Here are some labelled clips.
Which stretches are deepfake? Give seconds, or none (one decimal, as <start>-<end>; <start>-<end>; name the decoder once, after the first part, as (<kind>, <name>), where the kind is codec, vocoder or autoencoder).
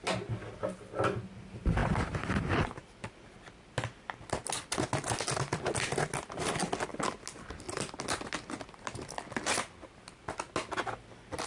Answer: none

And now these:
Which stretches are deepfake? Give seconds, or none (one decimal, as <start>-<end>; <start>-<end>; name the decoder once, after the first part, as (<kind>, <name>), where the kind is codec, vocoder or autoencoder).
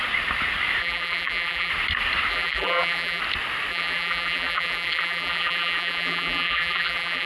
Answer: 0.8-1.7 (vocoder, BigVGAN v2); 2.3-3.2; 3.7-7.3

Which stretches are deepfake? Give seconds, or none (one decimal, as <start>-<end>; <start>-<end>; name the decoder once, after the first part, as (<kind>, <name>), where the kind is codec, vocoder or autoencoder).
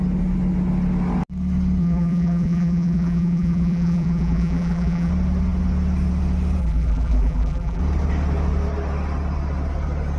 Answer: 1.8-5.1 (vocoder, BigVGAN v2); 6.6-7.8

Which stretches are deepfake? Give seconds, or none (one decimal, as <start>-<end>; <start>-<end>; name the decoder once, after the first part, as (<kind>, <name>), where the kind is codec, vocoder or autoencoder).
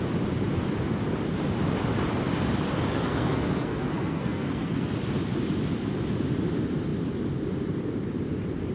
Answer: 2.9-4.9 (codec, SNAC)